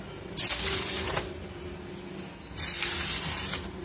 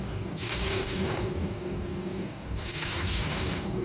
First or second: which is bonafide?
first